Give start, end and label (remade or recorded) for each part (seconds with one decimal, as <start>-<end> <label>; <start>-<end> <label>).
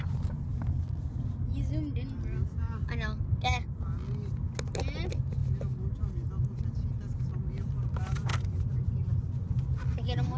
0.0-10.4 recorded